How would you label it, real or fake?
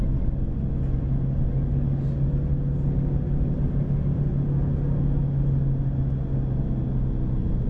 real